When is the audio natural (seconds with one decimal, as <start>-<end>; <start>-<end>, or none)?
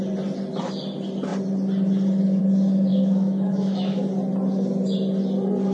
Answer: 0.0-2.9; 4.0-5.7